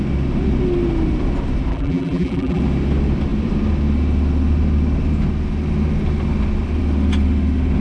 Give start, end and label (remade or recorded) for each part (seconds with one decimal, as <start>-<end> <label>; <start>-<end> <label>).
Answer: 0.0-1.7 recorded; 1.7-2.6 remade; 2.6-7.8 recorded